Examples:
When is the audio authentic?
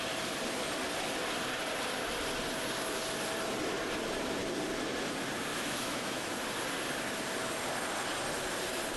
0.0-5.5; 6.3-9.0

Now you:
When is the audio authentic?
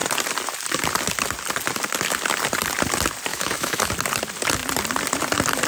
0.0-3.3; 3.9-5.7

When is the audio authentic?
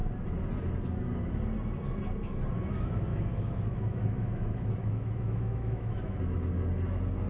0.0-3.1; 6.2-7.3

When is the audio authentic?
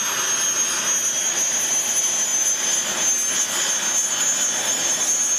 0.0-5.4